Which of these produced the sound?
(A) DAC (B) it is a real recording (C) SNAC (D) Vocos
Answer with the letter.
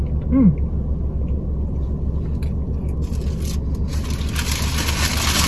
B